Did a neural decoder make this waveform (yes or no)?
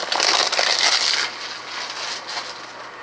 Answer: no